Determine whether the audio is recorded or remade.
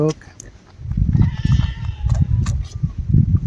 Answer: recorded